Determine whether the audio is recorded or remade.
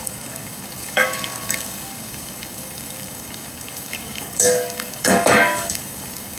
remade